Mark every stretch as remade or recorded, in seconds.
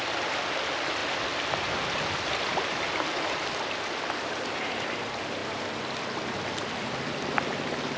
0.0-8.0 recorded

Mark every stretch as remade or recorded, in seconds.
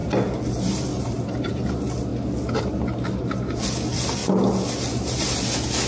0.0-0.5 recorded; 0.5-2.1 remade; 2.1-2.6 recorded; 2.6-4.2 remade; 4.2-4.9 recorded; 4.9-5.9 remade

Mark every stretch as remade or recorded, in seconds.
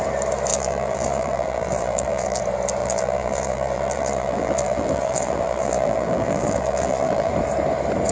0.0-0.5 recorded; 0.5-2.4 remade; 2.4-2.8 recorded; 2.8-7.3 remade; 7.3-8.1 recorded